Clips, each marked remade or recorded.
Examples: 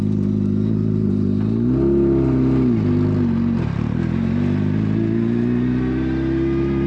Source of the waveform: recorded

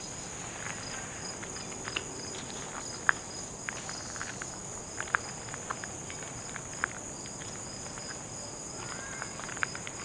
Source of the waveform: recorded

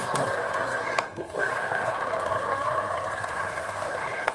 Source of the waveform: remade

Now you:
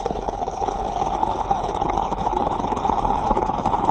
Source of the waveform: remade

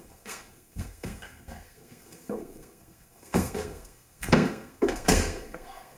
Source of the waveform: remade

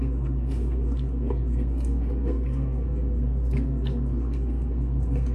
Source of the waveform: remade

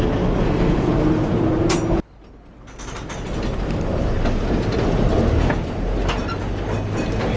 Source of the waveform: recorded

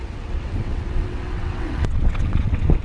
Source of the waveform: remade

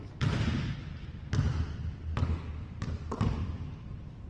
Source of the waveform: recorded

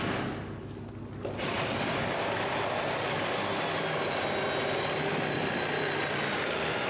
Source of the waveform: recorded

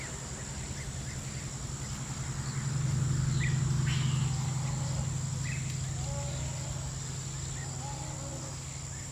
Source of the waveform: recorded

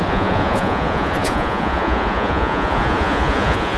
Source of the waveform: remade